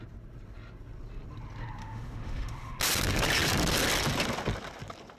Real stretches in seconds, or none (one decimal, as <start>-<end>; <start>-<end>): 0.0-1.8; 2.8-5.2